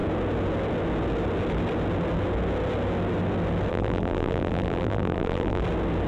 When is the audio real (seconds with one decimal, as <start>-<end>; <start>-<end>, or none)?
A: 0.0-3.7; 5.6-6.1